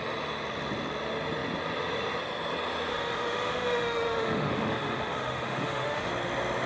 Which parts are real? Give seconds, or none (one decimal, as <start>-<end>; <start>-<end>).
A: 0.0-2.9; 6.1-6.7